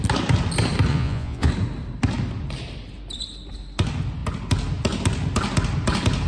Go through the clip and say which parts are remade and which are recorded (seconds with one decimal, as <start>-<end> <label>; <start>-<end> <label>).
0.0-0.9 recorded; 0.9-1.5 remade; 1.5-6.3 recorded